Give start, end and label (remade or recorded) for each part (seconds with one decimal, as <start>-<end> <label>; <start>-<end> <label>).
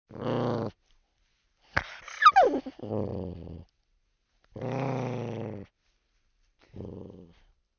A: 0.0-7.8 recorded